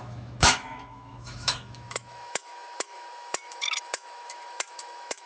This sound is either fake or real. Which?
fake